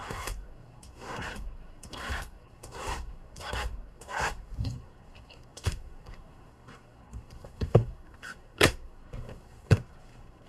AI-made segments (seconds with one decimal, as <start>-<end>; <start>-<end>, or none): 0.0-10.5